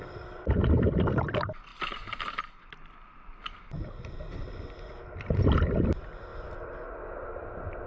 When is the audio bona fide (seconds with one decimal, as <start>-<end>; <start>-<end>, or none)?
6.3-7.4